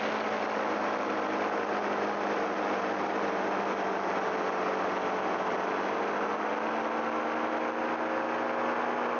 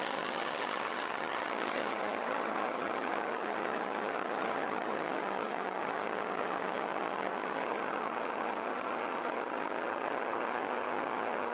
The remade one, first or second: second